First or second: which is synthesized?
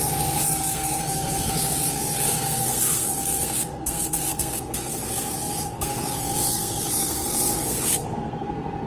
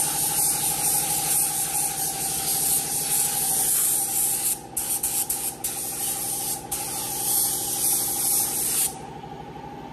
first